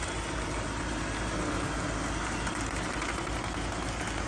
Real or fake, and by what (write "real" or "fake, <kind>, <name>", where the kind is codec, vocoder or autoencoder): real